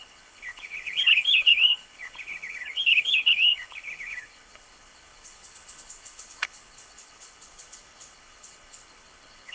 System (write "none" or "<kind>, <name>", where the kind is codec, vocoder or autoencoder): codec, HILCodec